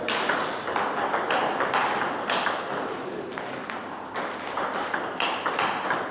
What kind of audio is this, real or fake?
real